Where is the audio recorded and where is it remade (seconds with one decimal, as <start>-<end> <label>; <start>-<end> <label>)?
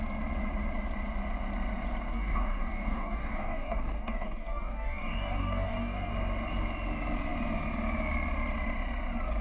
0.0-2.1 recorded; 2.1-6.1 remade; 6.1-9.4 recorded